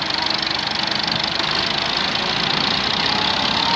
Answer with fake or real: real